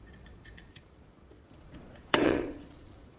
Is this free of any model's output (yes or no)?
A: no